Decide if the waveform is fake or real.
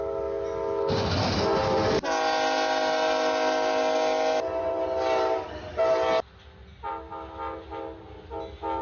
real